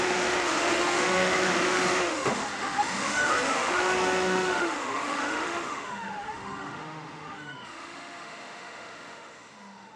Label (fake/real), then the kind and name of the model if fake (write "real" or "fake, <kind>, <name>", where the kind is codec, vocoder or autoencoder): fake, autoencoder, DAC-VAE